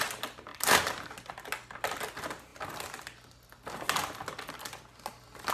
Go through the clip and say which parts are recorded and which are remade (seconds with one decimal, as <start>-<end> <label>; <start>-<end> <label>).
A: 0.0-5.5 recorded